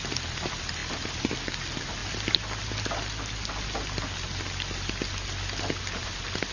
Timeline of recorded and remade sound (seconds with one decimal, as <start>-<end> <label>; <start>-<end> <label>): 0.0-0.8 remade; 0.8-1.3 recorded; 1.3-2.0 remade; 2.0-5.8 recorded; 5.8-6.5 remade